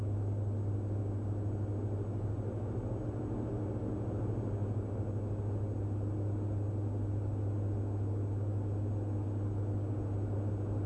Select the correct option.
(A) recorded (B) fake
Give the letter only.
A